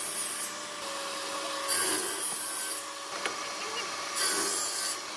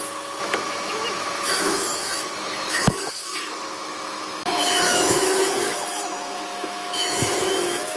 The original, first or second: first